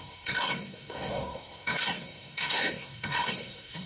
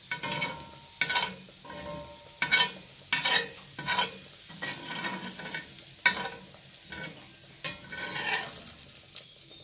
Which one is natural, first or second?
second